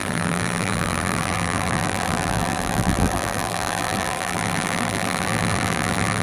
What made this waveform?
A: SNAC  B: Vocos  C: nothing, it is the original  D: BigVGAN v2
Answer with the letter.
D